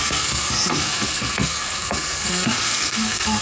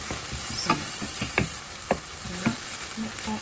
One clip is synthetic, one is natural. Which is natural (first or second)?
second